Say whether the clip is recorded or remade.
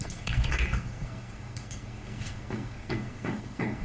remade